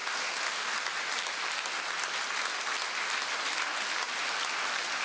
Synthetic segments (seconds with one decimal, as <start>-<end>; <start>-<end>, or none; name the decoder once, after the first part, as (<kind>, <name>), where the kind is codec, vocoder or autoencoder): none